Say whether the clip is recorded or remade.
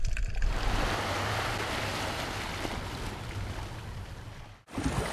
recorded